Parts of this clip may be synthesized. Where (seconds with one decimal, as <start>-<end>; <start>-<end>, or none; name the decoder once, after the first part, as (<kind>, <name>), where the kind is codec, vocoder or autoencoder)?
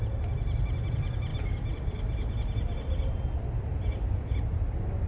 none